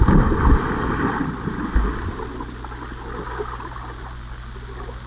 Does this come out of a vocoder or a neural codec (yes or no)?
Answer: no